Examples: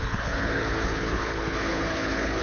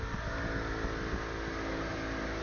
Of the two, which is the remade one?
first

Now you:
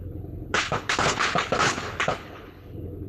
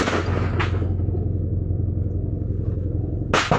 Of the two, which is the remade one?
first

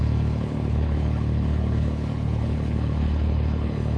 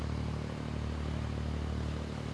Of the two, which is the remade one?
first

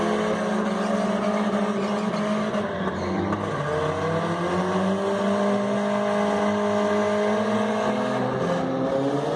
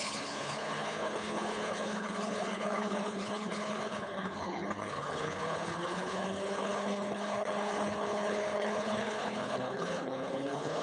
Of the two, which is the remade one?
second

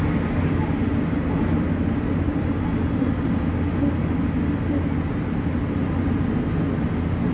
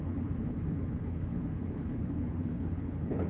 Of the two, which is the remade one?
second